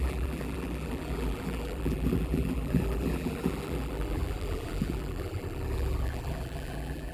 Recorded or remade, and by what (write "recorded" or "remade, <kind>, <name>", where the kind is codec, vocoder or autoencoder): remade, vocoder, BigVGAN v2